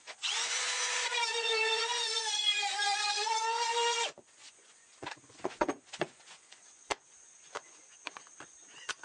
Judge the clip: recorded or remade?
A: remade